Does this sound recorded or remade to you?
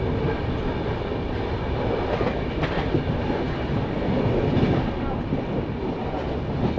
recorded